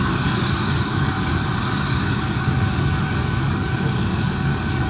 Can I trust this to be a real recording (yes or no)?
no